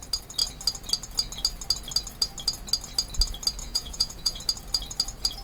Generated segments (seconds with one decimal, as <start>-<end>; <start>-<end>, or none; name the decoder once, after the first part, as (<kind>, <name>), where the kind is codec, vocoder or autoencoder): 3.6-4.4 (vocoder, Vocos)